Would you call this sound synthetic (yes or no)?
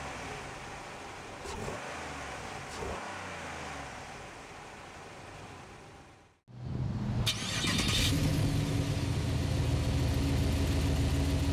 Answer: no